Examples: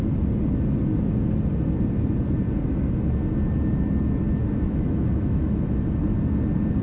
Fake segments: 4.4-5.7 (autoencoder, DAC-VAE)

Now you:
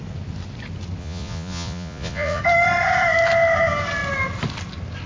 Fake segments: 1.0-2.4 (vocoder, Vocos)

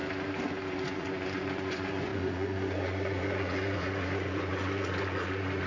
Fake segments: 0.7-5.7 (vocoder, Vocos)